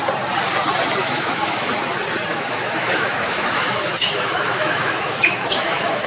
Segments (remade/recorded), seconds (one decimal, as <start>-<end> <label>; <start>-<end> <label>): 0.0-1.0 recorded; 1.0-1.7 remade; 1.7-2.3 recorded; 2.3-6.1 remade